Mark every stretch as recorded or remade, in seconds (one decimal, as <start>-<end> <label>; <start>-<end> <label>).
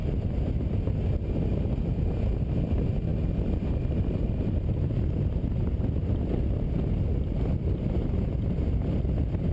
0.0-9.5 recorded